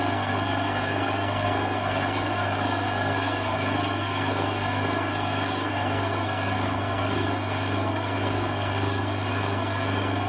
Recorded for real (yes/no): no